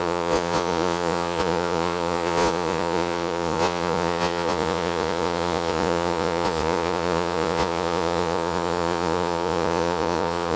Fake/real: fake